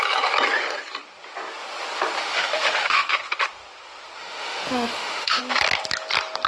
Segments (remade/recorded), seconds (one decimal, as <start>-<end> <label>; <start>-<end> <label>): 0.0-2.2 recorded; 2.2-3.1 remade; 3.1-4.2 recorded; 4.2-5.4 remade; 5.4-6.5 recorded